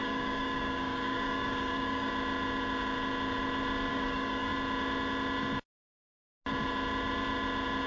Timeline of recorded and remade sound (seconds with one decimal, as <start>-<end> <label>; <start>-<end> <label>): 0.0-2.1 remade; 2.1-3.9 recorded; 3.9-4.5 remade; 4.5-7.9 recorded